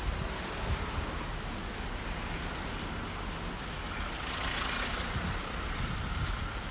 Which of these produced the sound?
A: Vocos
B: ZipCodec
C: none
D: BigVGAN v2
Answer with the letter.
C